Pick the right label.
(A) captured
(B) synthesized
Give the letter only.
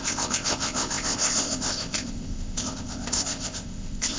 B